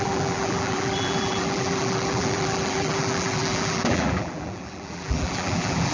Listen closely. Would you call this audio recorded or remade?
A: remade